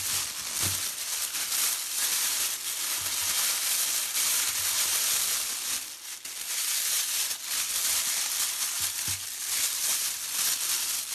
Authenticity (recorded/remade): recorded